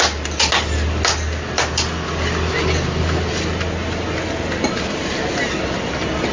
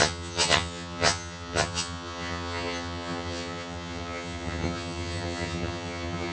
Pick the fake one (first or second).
second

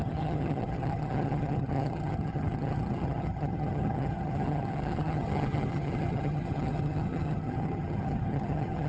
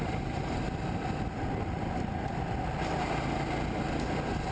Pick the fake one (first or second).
first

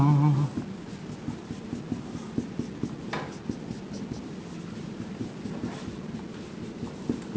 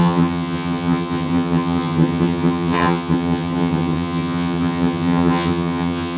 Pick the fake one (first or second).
second